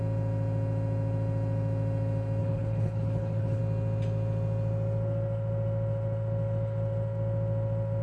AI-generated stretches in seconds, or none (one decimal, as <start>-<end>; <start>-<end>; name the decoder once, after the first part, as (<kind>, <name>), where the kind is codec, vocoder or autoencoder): 2.4-3.6 (codec, HILCodec)